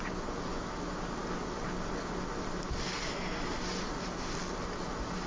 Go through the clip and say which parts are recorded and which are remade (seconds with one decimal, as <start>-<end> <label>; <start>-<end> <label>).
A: 0.0-5.3 recorded